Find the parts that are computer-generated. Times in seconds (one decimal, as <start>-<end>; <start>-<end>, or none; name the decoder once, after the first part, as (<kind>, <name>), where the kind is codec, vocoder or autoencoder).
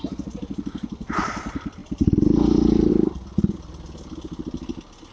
1.8-2.9 (vocoder, BigVGAN v2)